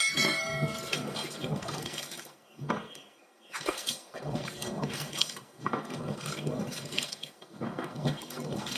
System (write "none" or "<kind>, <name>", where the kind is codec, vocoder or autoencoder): codec, SNAC